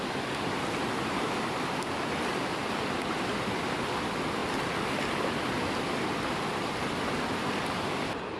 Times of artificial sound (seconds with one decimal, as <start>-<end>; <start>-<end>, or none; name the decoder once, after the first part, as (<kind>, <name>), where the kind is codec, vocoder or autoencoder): none